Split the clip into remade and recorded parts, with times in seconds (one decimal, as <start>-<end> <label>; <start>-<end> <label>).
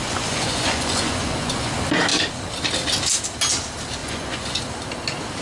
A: 0.0-1.7 remade; 1.7-4.0 recorded; 4.0-4.6 remade; 4.6-5.4 recorded